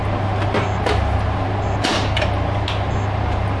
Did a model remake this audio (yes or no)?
no